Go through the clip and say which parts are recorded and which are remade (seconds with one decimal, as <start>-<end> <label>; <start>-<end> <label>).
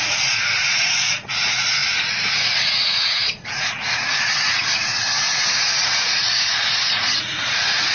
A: 0.0-7.9 remade